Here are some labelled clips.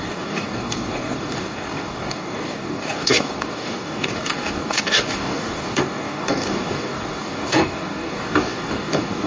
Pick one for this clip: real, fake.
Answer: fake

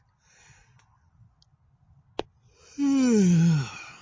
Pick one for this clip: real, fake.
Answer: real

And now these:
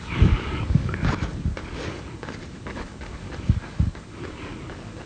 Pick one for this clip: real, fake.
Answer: fake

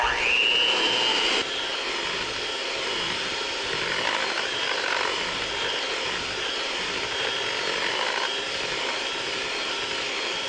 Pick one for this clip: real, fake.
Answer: real